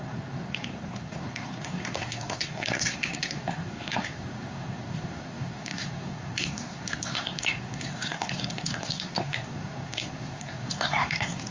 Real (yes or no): no